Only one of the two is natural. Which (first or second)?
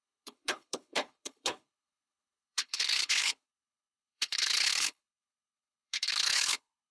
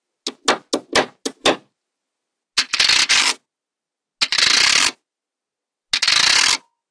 second